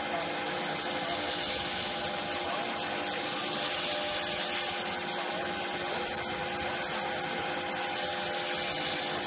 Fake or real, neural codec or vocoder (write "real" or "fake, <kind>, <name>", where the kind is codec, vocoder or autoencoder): real